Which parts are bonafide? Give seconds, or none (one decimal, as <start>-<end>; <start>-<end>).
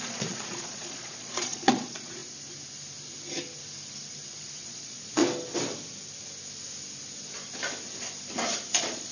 2.2-4.6; 5.2-8.7